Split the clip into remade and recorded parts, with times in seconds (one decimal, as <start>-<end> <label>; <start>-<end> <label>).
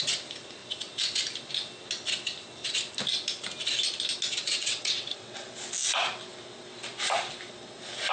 0.0-4.4 recorded; 4.4-5.5 remade; 5.5-8.1 recorded